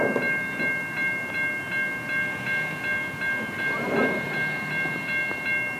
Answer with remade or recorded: recorded